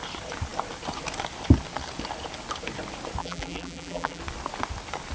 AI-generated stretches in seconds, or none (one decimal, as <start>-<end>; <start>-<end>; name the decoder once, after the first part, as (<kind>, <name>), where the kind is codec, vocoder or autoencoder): 3.2-4.2 (vocoder, BigVGAN v2)